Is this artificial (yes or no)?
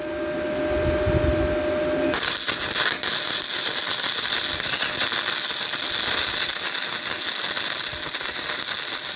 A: no